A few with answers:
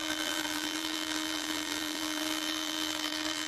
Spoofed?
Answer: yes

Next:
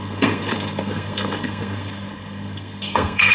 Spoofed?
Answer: yes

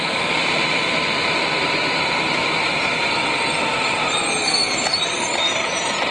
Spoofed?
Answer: yes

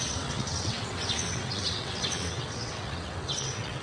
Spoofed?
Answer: yes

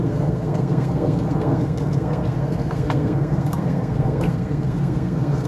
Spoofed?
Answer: yes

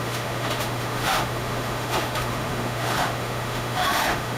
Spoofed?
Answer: yes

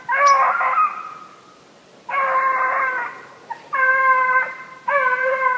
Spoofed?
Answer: no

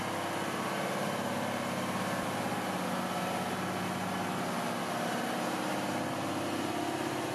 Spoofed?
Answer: no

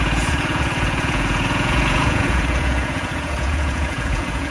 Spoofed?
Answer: yes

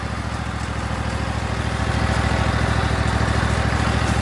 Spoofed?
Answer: no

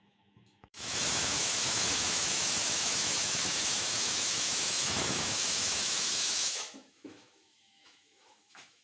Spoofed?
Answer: yes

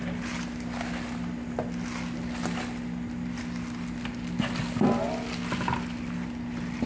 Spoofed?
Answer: no